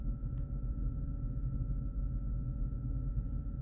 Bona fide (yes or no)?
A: yes